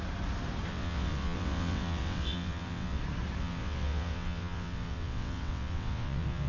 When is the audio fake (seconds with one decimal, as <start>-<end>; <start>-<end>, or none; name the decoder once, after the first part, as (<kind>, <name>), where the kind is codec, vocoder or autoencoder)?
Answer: 0.7-3.0 (vocoder, WaveNeXt); 3.4-6.5